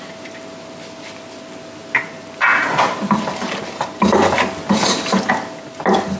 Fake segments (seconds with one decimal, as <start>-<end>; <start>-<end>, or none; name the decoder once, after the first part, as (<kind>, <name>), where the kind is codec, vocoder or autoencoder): none